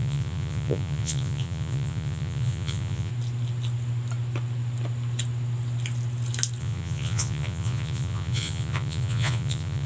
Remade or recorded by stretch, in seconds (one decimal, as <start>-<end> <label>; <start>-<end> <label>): 0.0-3.1 remade; 3.1-6.6 recorded; 6.6-9.9 remade